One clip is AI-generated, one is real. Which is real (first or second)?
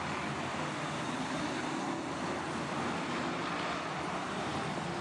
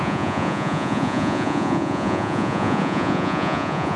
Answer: first